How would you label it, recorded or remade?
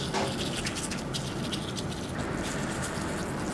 recorded